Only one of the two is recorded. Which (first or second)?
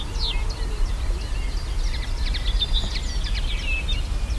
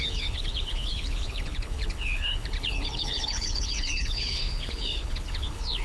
first